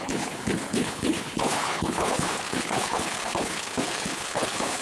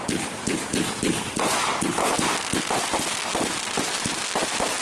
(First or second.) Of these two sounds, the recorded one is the second